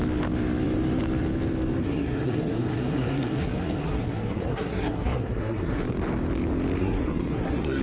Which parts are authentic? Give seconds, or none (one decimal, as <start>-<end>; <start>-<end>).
0.0-1.8; 5.8-6.8